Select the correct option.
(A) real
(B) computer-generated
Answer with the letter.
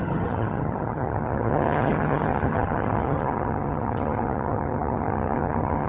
B